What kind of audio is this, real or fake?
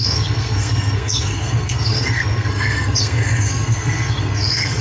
fake